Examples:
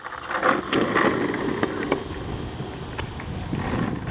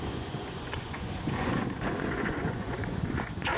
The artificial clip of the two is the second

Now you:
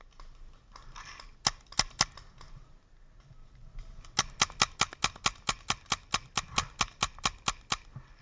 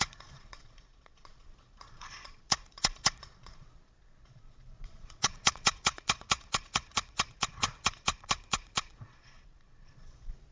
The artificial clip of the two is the second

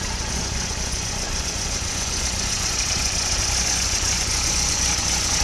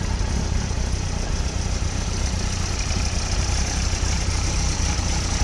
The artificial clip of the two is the first